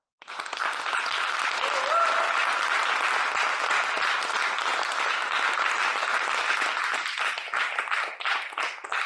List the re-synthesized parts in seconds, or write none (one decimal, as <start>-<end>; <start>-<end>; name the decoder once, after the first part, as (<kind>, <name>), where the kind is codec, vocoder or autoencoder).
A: none